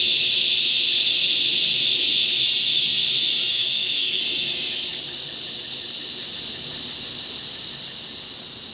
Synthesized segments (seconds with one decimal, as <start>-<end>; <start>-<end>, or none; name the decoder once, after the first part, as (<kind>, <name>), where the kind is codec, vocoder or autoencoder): 3.5-4.2 (codec, SNAC)